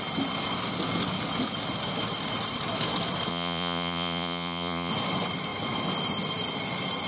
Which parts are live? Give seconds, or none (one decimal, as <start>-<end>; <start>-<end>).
0.0-3.3; 4.9-7.1